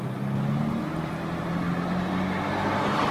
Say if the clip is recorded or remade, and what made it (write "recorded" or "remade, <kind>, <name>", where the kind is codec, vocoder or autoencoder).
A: recorded